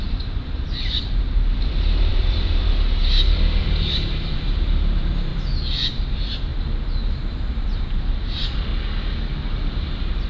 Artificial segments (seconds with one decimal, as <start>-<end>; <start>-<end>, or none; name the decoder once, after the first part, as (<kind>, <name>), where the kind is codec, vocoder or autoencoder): 0.0-5.3 (vocoder, BigVGAN v2); 5.9-6.5; 7.3-8.7; 9.7-10.3